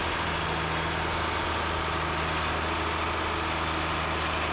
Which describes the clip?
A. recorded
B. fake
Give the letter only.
A